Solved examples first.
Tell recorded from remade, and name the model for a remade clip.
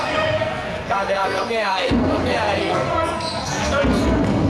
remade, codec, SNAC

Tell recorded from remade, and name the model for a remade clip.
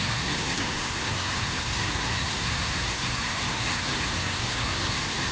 remade, codec, SNAC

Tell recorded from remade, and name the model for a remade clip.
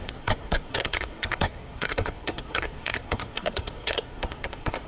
remade, codec, SNAC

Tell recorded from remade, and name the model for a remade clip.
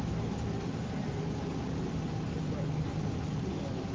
recorded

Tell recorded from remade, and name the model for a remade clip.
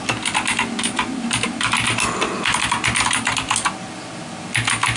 recorded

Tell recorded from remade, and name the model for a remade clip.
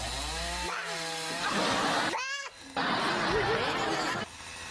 recorded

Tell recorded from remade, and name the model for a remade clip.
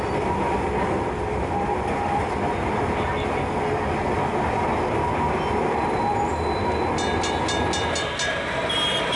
recorded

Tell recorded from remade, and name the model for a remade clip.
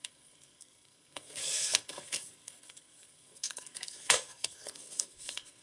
remade, codec, SNAC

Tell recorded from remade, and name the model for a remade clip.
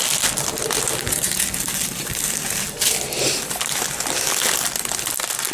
recorded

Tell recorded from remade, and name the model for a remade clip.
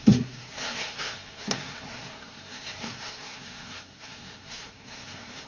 remade, codec, SNAC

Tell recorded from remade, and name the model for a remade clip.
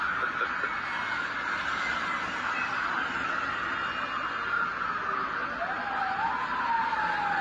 recorded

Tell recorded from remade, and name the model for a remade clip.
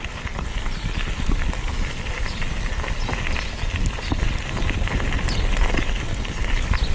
recorded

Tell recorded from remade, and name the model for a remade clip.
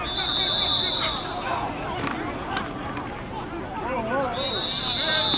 recorded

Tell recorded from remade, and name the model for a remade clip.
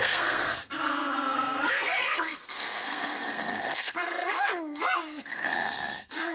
remade, codec, SNAC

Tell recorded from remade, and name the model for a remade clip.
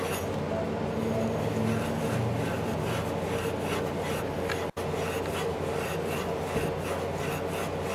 recorded